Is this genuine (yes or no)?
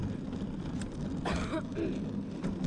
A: yes